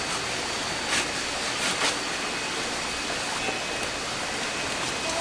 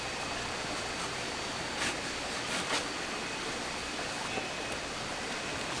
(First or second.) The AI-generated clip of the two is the second